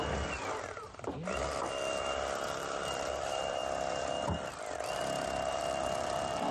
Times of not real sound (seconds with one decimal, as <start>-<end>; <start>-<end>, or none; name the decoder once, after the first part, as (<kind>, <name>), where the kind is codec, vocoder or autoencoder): 0.0-3.6 (vocoder, BigVGAN v2); 4.5-5.0; 5.6-6.5